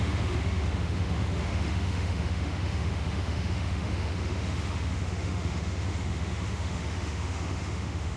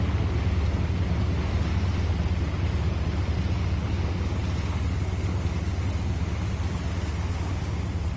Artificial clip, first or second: first